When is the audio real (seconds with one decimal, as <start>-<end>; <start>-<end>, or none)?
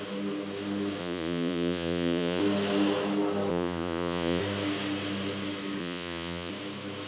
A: 0.0-1.0; 2.4-3.5; 4.4-5.8; 6.5-7.1